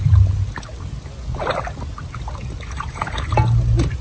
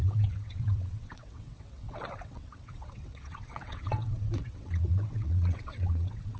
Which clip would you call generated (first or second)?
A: second